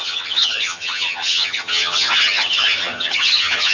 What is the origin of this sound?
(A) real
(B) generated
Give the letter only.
B